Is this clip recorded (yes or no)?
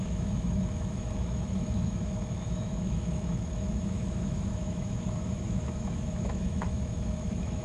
no